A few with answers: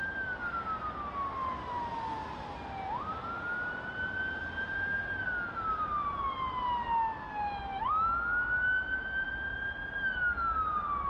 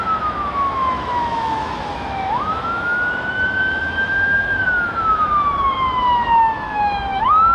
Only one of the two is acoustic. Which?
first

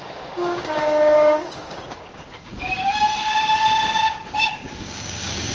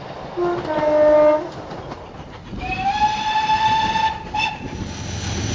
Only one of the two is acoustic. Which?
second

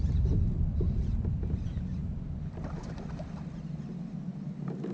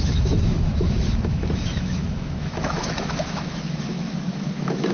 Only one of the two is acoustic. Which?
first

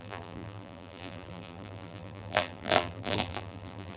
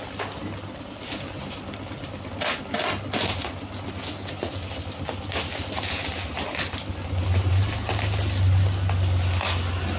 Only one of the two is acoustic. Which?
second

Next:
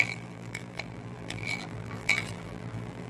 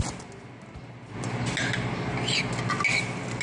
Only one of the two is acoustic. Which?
second